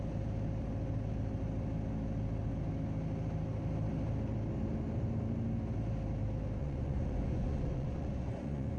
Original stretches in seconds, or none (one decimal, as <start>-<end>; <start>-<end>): 0.0-6.6